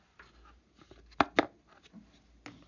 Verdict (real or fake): real